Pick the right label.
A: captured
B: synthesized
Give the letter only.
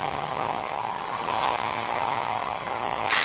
B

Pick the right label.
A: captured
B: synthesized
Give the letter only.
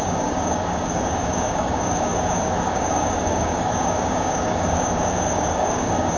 B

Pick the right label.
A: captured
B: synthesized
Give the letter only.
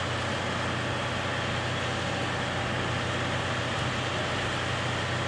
A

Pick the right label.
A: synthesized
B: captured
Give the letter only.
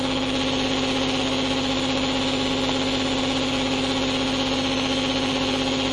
B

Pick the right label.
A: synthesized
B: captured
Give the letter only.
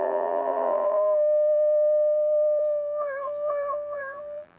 A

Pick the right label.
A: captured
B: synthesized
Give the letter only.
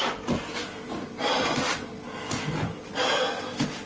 A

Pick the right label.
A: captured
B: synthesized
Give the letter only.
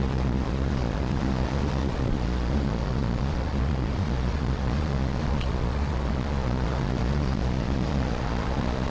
B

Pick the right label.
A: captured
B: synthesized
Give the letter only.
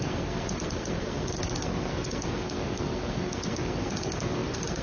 B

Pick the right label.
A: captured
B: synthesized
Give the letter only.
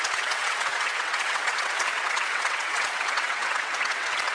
B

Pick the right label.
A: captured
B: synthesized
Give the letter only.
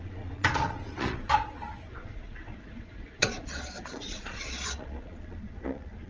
B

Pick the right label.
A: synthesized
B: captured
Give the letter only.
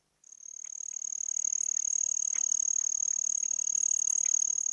B